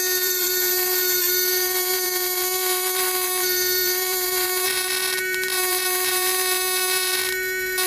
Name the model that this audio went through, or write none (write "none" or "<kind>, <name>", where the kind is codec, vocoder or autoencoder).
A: vocoder, BigVGAN v2